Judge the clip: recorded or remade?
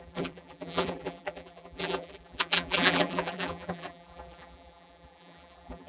remade